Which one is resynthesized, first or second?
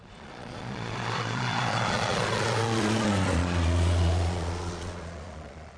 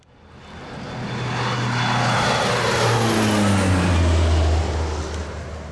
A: first